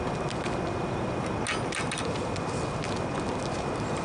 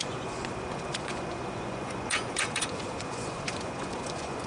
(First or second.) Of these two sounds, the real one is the first